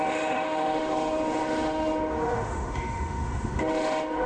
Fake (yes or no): yes